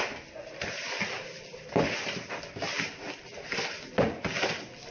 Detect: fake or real real